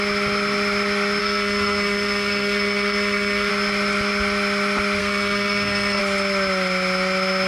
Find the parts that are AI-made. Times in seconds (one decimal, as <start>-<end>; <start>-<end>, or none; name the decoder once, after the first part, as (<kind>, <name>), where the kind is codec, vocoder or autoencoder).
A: 1.2-3.5 (codec, SNAC); 5.0-6.0